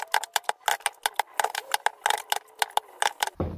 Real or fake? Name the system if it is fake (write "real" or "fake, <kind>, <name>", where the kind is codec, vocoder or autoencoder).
real